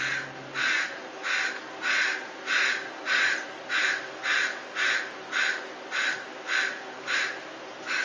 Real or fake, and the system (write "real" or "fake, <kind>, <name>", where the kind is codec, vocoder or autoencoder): real